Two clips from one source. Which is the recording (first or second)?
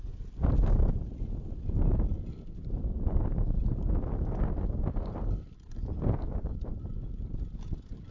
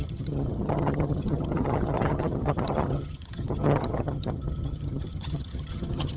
first